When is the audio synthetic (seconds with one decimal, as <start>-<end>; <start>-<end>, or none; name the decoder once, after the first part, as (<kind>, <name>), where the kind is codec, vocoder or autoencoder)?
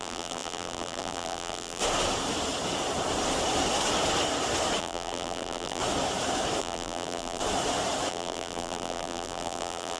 0.0-1.8 (vocoder, BigVGAN v2); 4.8-5.8; 6.6-7.4; 8.1-10.0